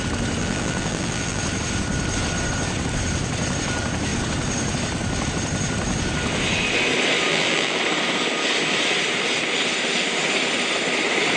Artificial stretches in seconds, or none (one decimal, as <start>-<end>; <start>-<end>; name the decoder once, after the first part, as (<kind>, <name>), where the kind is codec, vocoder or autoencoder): 0.4-1.4 (vocoder, BigVGAN v2); 7.3-7.8